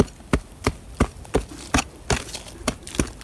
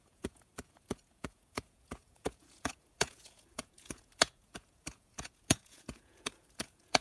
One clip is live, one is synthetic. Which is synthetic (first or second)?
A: second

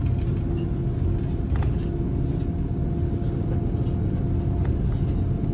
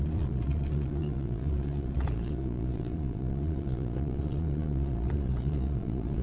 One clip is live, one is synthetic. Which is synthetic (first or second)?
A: second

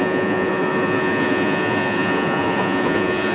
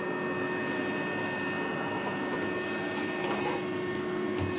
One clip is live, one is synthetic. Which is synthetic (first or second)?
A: first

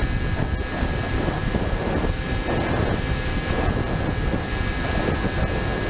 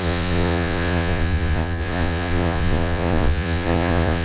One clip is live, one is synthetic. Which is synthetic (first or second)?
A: second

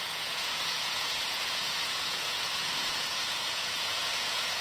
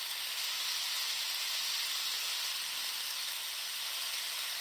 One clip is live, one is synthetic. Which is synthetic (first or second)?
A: first